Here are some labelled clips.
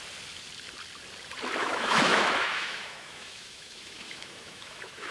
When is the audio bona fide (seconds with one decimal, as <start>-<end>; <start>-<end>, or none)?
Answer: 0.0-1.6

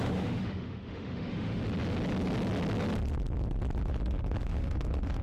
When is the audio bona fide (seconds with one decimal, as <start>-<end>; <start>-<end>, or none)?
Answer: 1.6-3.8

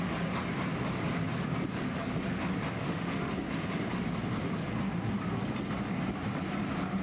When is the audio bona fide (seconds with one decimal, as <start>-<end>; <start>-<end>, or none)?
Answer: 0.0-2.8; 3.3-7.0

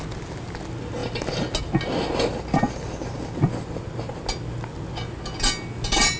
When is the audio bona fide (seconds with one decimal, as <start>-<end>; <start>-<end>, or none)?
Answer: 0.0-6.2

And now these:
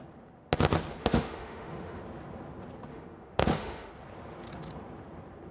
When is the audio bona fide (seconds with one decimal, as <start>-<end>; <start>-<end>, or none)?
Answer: 0.0-1.0; 2.0-2.9; 3.9-5.5

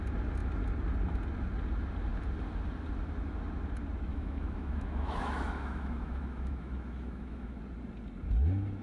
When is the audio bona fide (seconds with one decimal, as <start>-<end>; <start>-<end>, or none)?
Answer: 0.0-4.1; 7.6-8.8

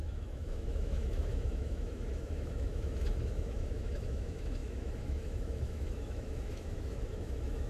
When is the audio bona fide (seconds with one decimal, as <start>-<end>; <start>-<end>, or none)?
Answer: none